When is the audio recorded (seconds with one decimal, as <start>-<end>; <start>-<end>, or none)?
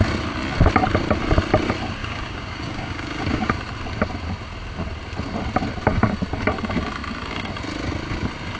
0.0-2.0; 3.5-8.6